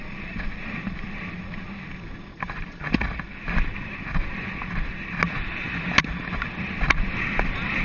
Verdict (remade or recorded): recorded